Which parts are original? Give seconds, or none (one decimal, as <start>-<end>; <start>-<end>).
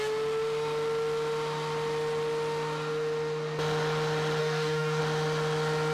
0.0-4.4; 5.0-5.9